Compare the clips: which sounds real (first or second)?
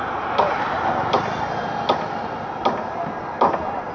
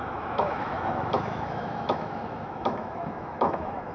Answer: first